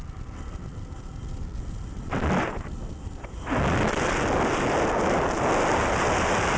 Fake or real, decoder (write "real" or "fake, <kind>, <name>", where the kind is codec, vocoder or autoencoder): real